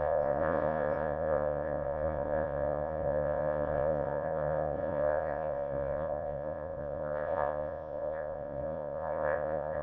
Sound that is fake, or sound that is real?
fake